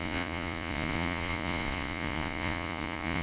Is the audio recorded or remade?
remade